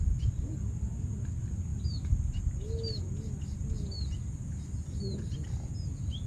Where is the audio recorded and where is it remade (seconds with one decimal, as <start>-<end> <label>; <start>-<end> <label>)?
0.0-6.3 recorded